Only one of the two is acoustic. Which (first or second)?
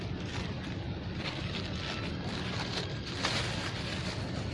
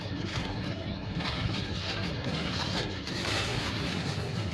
first